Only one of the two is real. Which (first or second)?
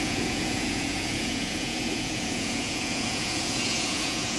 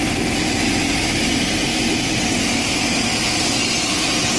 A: second